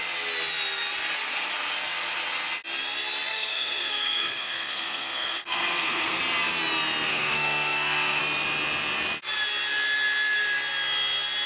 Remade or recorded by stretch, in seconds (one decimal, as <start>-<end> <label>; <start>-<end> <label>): 0.0-3.3 recorded; 3.3-6.2 remade; 6.2-7.1 recorded; 7.1-8.2 remade; 8.2-11.5 recorded

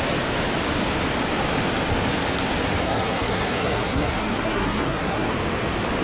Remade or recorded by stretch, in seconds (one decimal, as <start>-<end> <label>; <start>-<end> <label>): 0.0-2.8 recorded; 2.8-5.3 remade; 5.3-6.0 recorded

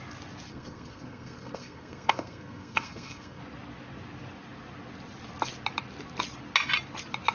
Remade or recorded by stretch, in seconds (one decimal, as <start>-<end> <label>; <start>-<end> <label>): 0.0-0.5 recorded; 0.5-3.4 remade; 3.4-7.3 recorded

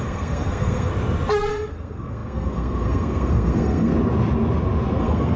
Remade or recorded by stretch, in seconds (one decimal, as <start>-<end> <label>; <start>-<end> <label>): 0.0-0.9 remade; 0.9-1.5 recorded; 1.5-3.9 remade; 3.9-5.0 recorded; 5.0-5.4 remade